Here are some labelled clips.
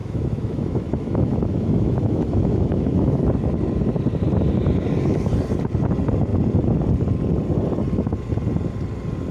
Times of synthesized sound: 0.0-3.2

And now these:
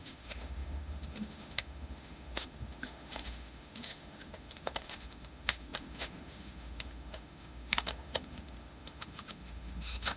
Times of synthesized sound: 0.0-10.2

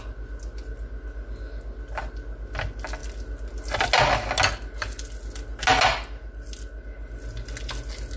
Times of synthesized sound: none

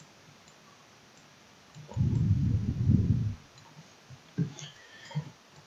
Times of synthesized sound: 4.4-5.3

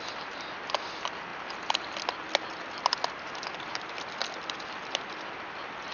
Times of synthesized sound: none

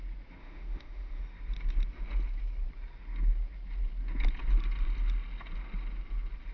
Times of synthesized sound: 0.4-1.2